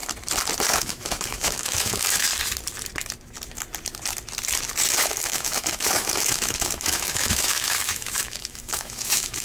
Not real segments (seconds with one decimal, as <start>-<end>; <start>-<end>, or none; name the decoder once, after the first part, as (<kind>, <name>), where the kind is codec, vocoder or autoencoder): 0.8-2.3 (autoencoder, DAC-VAE); 5.0-9.4